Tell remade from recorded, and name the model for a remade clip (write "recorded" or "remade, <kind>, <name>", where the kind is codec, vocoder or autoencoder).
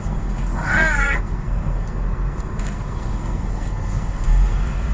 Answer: remade, codec, SNAC